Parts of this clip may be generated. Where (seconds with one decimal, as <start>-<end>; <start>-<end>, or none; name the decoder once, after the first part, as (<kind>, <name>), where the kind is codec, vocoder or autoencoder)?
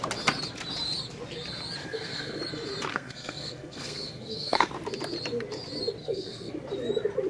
1.8-2.4 (codec, SNAC); 2.9-4.7; 6.0-6.5